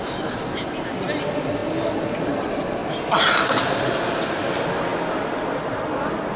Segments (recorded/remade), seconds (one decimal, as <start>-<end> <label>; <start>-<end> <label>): 0.0-6.4 recorded